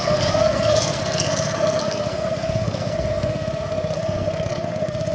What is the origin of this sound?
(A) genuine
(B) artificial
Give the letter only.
B